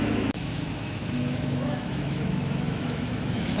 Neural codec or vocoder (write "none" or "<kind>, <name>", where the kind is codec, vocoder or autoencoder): autoencoder, DAC-VAE